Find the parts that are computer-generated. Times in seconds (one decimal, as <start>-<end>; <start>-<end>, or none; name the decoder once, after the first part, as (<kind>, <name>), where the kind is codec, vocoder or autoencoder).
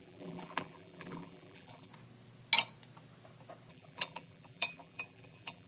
0.0-1.9 (vocoder, BigVGAN v2); 3.7-5.7